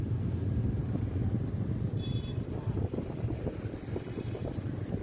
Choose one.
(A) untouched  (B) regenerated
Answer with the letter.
A